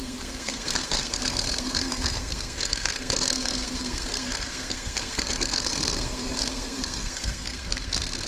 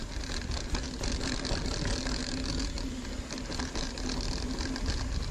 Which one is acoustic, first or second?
second